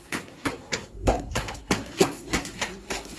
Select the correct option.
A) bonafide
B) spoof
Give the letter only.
B